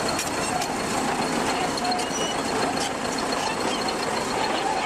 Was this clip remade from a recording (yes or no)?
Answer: no